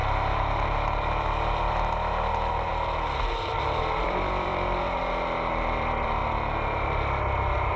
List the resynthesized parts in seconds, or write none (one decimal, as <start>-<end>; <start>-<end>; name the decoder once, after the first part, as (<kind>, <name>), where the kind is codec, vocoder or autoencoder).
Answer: 2.1-2.7 (vocoder, BigVGAN v2); 3.8-6.2; 7.2-7.8